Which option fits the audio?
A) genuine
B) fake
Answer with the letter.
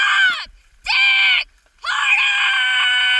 A